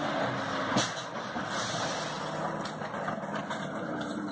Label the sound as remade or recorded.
recorded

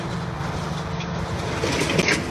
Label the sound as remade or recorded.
recorded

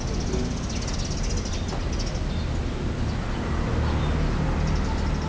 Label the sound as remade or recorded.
recorded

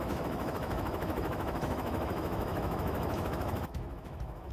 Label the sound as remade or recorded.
remade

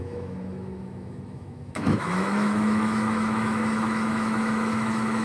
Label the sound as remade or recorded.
remade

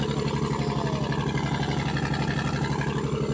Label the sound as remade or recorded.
recorded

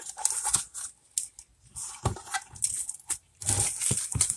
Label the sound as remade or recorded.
recorded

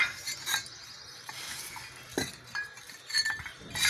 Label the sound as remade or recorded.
recorded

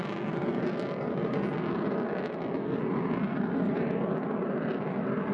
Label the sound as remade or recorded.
recorded